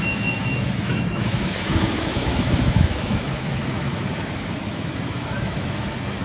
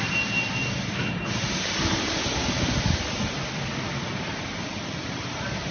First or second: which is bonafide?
second